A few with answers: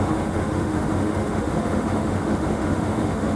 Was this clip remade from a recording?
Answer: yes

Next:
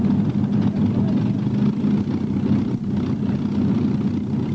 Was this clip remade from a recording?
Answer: no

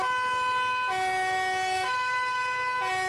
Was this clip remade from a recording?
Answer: no